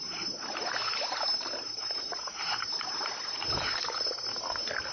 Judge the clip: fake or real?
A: real